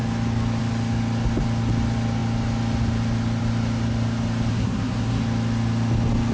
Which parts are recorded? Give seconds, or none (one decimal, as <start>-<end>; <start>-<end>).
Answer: 0.0-4.5; 5.2-6.3